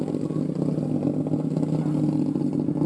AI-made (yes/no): no